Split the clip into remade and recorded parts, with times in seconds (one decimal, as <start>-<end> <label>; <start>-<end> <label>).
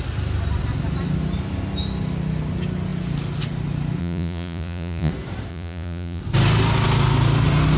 0.0-4.0 recorded; 4.0-5.1 remade; 5.1-5.5 recorded; 5.5-6.2 remade; 6.2-7.8 recorded